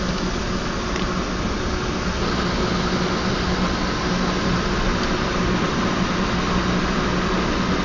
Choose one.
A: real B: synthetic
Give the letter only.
A